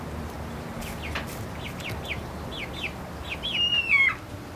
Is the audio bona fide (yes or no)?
yes